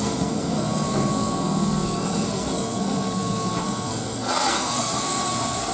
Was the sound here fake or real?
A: fake